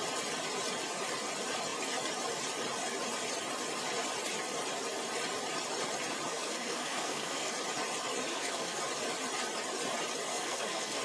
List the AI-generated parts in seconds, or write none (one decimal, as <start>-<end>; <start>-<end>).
6.3-7.5; 8.3-8.8; 10.3-11.0